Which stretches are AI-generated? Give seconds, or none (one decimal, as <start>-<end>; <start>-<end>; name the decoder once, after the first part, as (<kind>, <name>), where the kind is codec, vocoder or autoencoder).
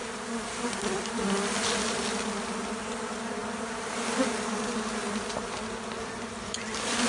2.8-3.4 (vocoder, BigVGAN v2); 6.3-7.1